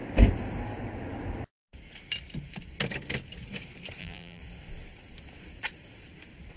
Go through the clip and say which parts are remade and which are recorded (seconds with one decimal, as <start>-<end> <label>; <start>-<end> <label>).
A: 0.0-4.0 recorded; 4.0-4.4 remade; 4.4-6.6 recorded